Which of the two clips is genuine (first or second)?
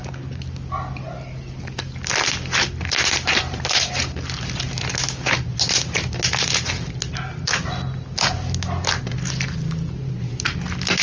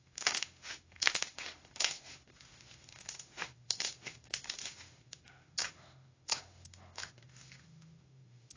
first